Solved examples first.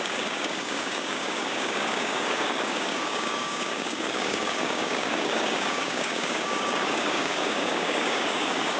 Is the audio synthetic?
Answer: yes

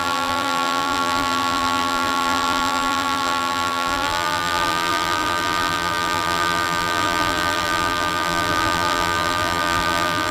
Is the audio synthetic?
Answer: yes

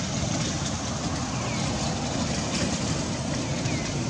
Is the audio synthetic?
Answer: no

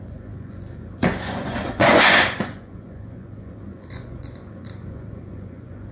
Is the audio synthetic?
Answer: yes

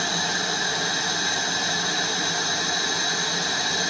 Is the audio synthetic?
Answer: no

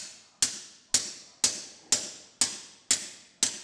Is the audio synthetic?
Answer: no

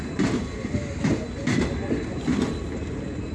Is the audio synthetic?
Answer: no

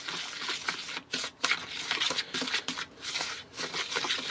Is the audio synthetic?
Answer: no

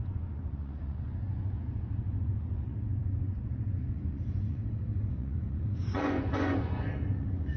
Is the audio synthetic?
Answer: yes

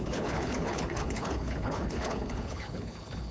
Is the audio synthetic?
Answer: yes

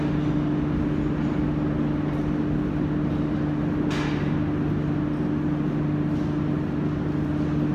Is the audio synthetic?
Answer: no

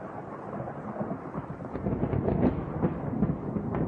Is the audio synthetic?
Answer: no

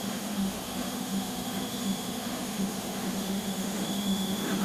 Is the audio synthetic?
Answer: yes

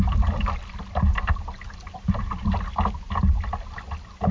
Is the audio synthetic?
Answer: no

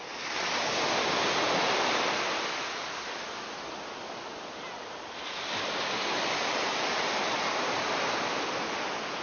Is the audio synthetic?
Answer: no